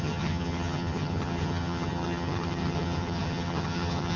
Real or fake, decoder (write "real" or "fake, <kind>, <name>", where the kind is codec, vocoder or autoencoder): fake, vocoder, HiFi-GAN